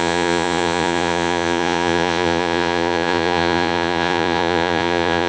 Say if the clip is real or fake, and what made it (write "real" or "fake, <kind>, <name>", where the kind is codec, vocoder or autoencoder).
fake, vocoder, Vocos